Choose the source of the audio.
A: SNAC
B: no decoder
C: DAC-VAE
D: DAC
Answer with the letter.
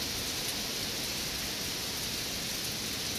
B